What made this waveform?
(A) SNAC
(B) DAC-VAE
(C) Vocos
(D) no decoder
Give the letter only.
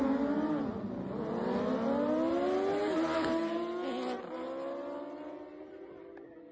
D